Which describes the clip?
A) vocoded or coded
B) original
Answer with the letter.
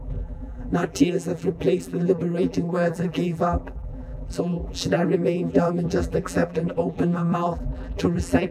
A